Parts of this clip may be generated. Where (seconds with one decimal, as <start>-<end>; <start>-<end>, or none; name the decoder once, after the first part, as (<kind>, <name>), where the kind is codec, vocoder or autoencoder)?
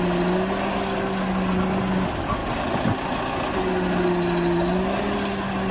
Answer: none